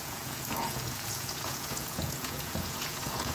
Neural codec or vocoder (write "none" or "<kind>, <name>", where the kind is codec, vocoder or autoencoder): vocoder, Vocos